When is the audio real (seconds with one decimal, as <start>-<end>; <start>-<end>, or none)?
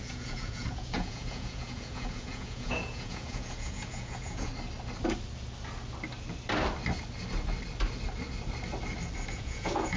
4.5-9.3